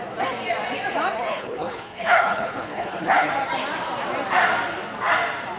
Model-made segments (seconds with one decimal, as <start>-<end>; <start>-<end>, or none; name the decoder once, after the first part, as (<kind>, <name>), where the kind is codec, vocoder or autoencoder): 1.3-3.3 (codec, HILCodec)